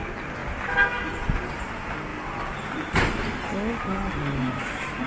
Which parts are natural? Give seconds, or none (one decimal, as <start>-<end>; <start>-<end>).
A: 0.0-5.1